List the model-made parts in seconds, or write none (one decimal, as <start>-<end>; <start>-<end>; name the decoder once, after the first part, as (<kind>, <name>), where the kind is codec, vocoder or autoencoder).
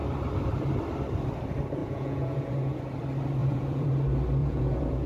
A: 1.8-2.8 (vocoder, Vocos); 3.4-3.9; 4.4-5.1